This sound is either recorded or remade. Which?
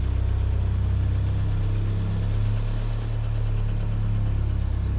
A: recorded